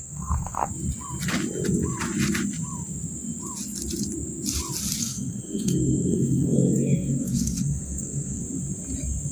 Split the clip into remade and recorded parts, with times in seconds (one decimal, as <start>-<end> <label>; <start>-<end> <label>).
0.0-0.7 remade; 0.7-5.0 recorded; 5.0-8.4 remade; 8.4-9.3 recorded